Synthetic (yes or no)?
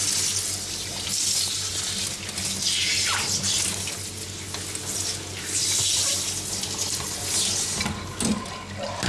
no